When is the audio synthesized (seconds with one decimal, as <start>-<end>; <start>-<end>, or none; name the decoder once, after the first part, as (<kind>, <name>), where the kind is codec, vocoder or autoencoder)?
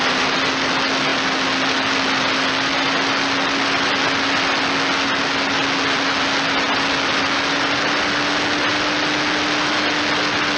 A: none